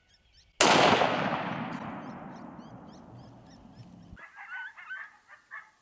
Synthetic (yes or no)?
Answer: no